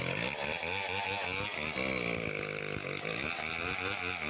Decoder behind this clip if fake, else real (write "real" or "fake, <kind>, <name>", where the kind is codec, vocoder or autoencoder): real